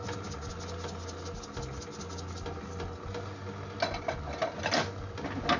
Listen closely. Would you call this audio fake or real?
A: real